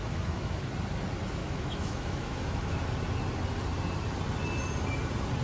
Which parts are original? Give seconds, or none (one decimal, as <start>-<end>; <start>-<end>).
0.6-1.4; 2.7-5.4